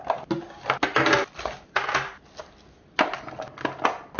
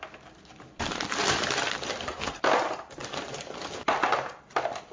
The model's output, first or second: second